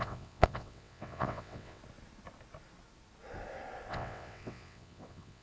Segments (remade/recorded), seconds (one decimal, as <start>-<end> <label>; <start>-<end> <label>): 0.0-1.8 remade; 1.8-3.9 recorded; 3.9-5.4 remade